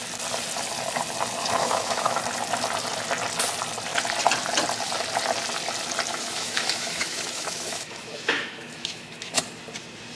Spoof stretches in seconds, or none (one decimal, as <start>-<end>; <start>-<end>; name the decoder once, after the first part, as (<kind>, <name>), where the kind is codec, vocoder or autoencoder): 1.6-2.2 (autoencoder, DAC-VAE); 6.1-9.4